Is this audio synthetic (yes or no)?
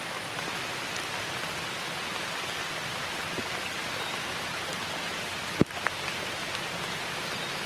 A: no